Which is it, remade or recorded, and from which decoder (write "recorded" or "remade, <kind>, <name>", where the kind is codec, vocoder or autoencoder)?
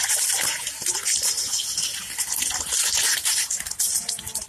recorded